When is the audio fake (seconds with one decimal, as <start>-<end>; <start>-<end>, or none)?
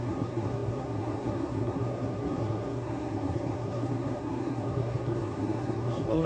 0.0-6.3